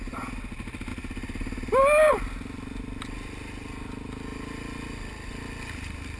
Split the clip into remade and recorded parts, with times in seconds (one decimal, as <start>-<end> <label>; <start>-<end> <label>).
0.0-6.2 recorded